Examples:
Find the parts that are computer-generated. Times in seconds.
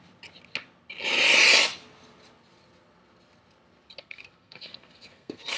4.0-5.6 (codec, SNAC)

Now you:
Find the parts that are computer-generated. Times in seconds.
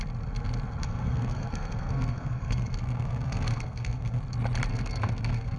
0.8-4.2 (codec, SNAC); 4.7-5.6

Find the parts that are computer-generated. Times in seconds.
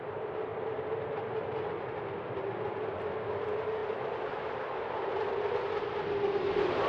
none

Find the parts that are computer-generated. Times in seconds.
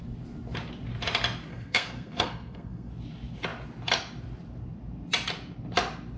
1.5-2.9 (codec, SNAC)